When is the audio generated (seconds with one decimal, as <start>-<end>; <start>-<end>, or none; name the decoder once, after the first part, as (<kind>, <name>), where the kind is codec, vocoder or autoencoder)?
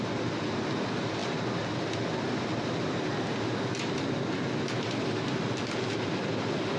none